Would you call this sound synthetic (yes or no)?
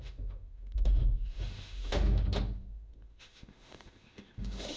yes